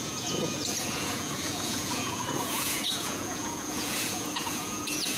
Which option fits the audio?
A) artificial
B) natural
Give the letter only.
A